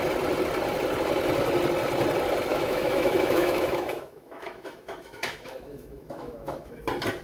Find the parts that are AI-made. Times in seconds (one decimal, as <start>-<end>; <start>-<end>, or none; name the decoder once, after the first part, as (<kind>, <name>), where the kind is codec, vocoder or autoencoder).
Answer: 2.5-6.8 (autoencoder, DAC-VAE)